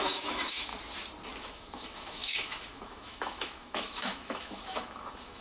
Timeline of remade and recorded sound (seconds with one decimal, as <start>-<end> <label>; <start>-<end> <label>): 0.0-0.7 remade; 0.7-1.4 recorded; 1.4-5.4 remade